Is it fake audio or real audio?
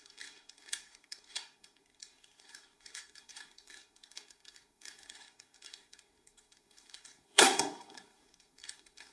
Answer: fake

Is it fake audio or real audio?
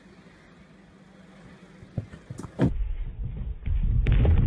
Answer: real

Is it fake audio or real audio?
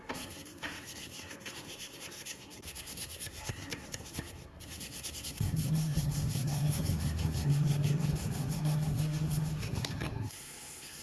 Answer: fake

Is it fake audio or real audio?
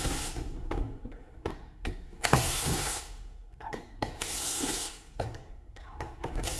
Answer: fake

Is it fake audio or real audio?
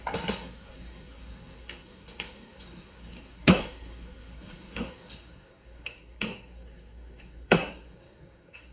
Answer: fake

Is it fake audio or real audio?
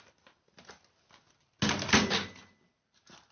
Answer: real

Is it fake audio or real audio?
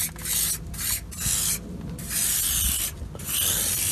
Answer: real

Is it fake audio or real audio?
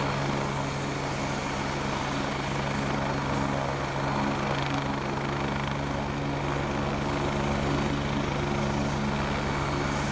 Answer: real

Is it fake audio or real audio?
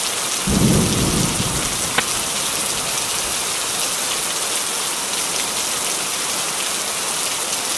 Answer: real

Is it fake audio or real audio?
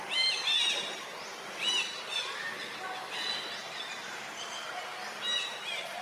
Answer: real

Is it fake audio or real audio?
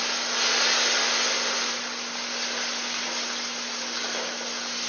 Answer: real